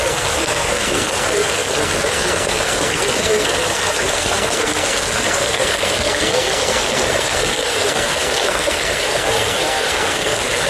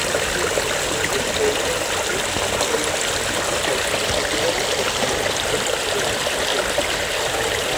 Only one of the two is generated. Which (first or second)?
first